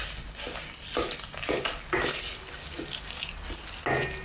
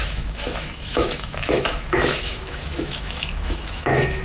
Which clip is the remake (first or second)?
second